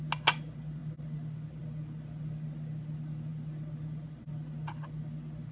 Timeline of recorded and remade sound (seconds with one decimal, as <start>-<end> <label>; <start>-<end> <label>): 0.0-5.5 recorded